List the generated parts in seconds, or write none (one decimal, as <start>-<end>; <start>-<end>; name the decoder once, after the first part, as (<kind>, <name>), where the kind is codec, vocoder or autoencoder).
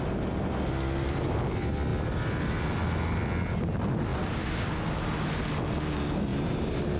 6.3-7.0 (vocoder, BigVGAN v2)